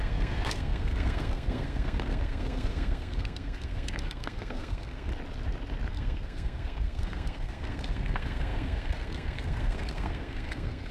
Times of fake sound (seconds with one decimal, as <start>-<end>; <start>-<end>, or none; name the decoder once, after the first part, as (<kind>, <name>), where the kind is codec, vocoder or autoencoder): 0.0-5.1 (codec, SNAC); 5.9-10.9